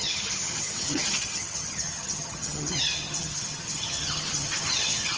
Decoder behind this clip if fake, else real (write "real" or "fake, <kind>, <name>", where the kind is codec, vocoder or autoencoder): fake, vocoder, HiFi-GAN